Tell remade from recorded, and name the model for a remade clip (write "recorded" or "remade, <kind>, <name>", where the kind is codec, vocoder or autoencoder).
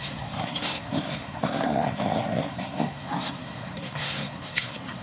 remade, codec, SNAC